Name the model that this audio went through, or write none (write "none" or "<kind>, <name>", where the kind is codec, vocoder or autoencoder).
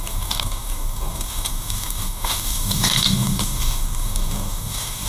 codec, DAC